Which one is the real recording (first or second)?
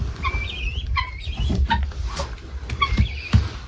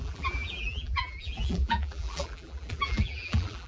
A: first